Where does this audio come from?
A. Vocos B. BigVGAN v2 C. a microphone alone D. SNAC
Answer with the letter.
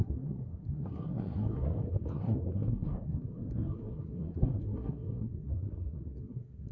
D